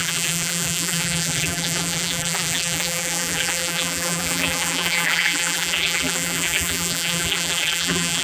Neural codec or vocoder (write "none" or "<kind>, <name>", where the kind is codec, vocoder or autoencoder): vocoder, BigVGAN v2